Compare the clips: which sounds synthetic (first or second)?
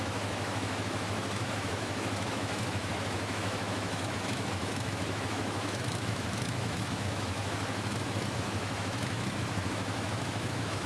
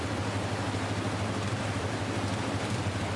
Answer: first